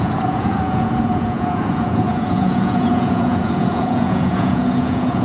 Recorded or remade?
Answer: remade